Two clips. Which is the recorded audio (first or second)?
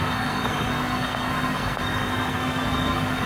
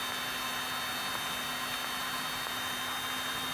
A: second